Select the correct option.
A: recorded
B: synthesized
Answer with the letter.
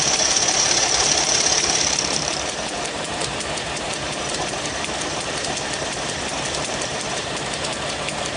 B